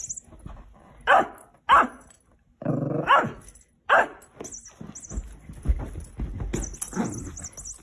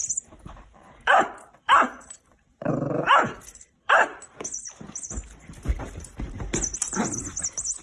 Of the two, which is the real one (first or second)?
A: first